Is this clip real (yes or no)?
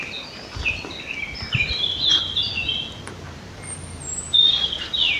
yes